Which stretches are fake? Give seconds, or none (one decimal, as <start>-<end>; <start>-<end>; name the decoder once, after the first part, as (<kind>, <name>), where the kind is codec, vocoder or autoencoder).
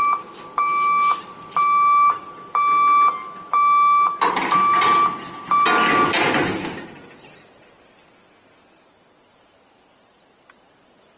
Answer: none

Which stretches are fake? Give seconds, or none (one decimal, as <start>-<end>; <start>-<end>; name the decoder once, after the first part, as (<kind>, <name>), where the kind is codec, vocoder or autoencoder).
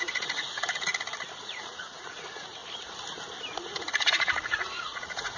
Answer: 0.0-0.9 (vocoder, Vocos); 1.4-2.6; 3.6-5.4